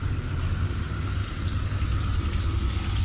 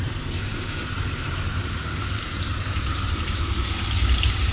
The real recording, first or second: first